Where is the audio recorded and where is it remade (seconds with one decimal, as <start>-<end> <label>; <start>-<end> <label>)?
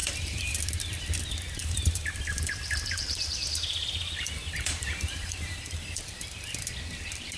0.0-0.6 remade; 0.6-1.6 recorded; 1.6-6.0 remade; 6.0-7.4 recorded